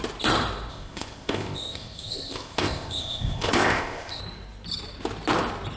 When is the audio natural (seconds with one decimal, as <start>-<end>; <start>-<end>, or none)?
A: 0.0-0.7; 4.2-5.8

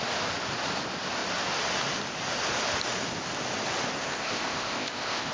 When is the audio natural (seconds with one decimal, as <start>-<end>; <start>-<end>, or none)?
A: 0.0-4.0

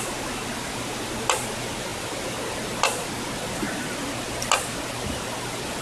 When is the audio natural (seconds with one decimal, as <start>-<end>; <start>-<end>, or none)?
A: 0.0-5.8

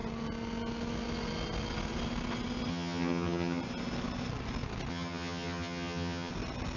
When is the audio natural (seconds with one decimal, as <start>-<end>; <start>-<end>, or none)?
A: 0.0-2.7; 3.6-4.9; 6.3-6.8

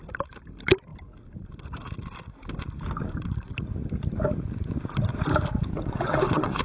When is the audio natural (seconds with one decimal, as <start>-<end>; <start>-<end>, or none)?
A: 0.0-5.7

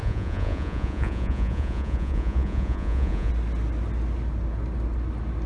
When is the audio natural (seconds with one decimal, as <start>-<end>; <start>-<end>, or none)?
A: 3.3-5.5

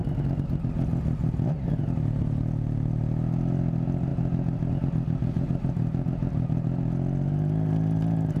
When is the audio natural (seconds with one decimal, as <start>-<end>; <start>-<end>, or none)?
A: 0.0-8.4

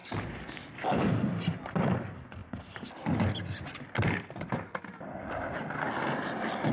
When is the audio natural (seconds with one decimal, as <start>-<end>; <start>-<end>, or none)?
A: 0.0-6.7